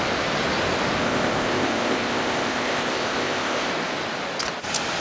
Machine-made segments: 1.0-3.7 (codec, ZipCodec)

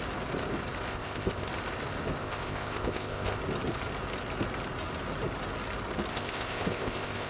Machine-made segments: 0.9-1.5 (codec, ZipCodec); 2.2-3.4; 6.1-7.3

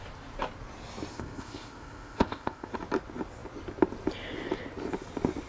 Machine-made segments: 1.1-2.7 (codec, ZipCodec)